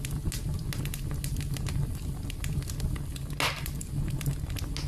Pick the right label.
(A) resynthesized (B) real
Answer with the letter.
B